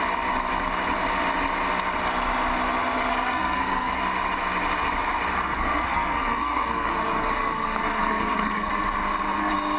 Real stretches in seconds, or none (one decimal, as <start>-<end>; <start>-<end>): 0.0-3.1; 4.0-5.3; 8.7-9.8